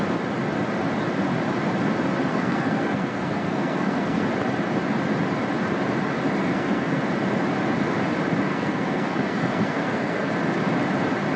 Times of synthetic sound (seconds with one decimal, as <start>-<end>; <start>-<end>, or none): 2.3-4.3; 6.4-7.0; 8.5-10.3